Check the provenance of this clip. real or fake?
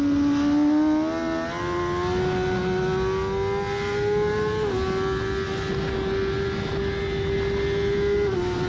real